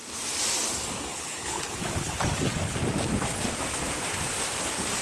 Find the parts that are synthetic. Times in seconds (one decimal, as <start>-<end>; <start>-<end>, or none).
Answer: 1.1-2.2